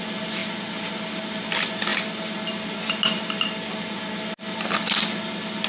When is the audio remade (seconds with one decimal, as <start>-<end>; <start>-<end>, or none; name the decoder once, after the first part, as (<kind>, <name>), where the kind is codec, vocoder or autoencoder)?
none